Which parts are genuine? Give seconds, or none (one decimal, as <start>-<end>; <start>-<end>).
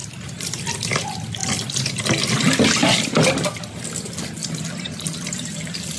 0.8-1.4; 1.9-2.8; 3.7-4.4; 5.0-6.0